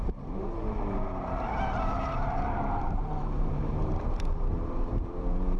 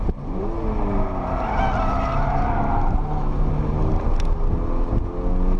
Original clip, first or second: second